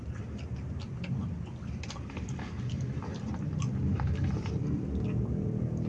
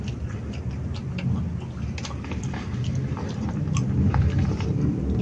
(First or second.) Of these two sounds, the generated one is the first